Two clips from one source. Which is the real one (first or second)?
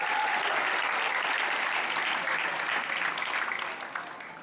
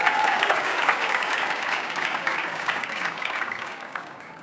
first